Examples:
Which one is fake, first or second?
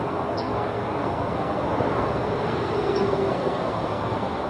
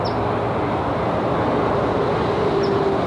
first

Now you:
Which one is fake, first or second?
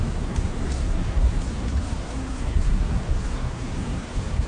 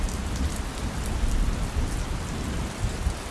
first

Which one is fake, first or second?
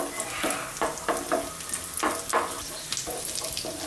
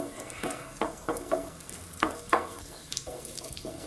second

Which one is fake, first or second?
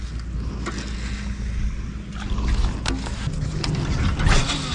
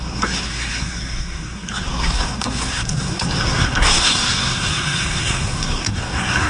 second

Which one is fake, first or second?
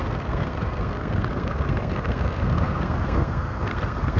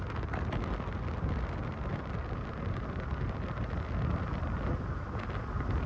first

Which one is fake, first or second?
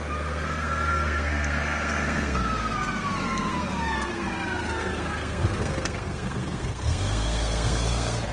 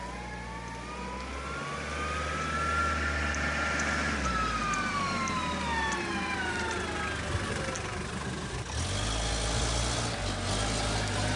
first